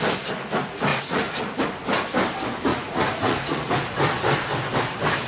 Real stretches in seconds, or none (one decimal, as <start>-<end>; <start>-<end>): 0.0-0.9; 1.5-2.7; 3.7-5.3